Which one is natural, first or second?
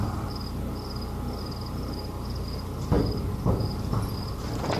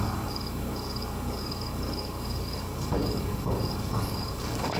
first